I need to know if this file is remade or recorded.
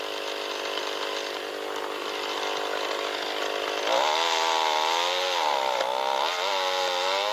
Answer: recorded